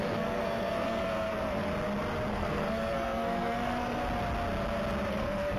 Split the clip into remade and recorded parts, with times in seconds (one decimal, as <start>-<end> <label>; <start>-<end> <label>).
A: 0.0-1.7 remade; 1.7-2.3 recorded; 2.3-4.0 remade; 4.0-5.1 recorded; 5.1-5.6 remade